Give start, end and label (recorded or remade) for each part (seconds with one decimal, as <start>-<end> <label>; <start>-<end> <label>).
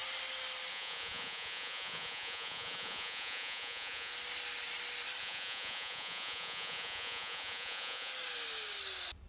0.0-0.7 recorded; 0.7-4.1 remade; 4.1-5.2 recorded; 5.2-8.1 remade; 8.1-9.3 recorded